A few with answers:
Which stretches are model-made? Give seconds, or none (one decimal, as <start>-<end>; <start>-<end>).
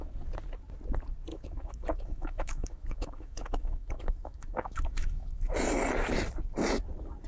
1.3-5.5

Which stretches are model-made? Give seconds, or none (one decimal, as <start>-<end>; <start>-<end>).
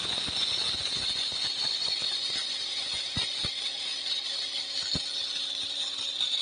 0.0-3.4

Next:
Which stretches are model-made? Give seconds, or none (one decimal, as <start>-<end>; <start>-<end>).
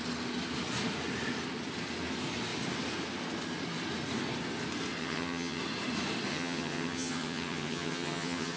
5.0-5.6; 6.3-8.6